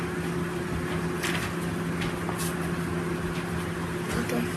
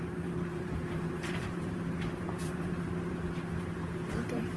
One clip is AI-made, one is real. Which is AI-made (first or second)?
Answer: second